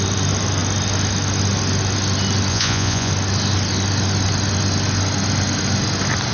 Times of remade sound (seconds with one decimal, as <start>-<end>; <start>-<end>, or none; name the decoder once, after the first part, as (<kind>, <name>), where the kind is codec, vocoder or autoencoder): 2.5-3.1 (vocoder, Vocos)